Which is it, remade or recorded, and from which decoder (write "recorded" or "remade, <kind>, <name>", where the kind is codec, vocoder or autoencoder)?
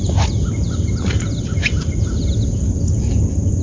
recorded